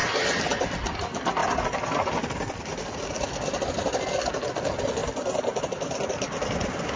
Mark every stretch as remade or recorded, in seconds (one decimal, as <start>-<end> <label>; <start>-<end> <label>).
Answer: 0.0-7.0 recorded